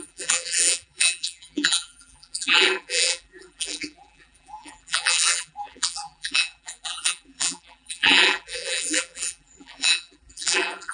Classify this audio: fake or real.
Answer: fake